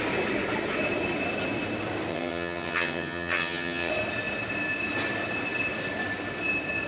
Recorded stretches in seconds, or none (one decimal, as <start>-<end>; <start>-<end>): 0.0-2.1; 3.9-6.9